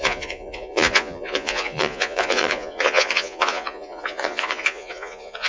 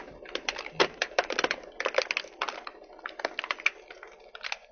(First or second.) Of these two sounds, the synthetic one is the first